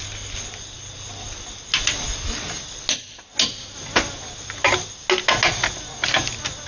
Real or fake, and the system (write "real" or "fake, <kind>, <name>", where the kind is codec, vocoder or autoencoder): real